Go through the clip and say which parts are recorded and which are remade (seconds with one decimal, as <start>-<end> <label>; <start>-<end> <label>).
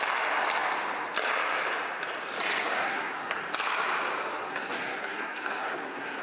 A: 0.0-2.6 recorded; 2.6-3.4 remade; 3.4-4.5 recorded; 4.5-6.2 remade